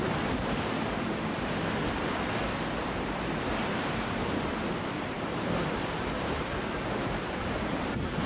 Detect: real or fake fake